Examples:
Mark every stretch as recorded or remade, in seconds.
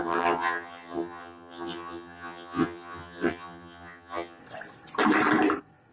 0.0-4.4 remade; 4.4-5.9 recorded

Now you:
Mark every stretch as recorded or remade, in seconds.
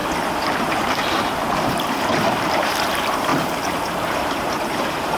0.0-0.6 recorded; 0.6-5.2 remade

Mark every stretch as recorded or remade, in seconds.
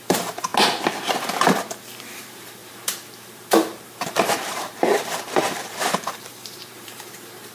0.0-0.5 remade; 0.5-2.2 recorded; 2.2-7.5 remade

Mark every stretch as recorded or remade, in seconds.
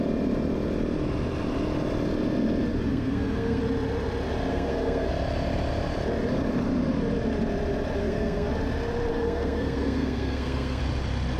0.0-2.9 recorded; 2.9-3.6 remade; 3.6-4.5 recorded; 4.5-5.1 remade; 5.1-8.0 recorded; 8.0-8.5 remade; 8.5-9.1 recorded; 9.1-10.8 remade; 10.8-11.4 recorded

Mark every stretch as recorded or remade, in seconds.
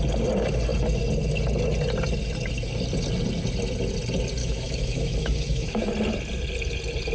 0.0-4.4 recorded; 4.4-5.9 remade; 5.9-7.1 recorded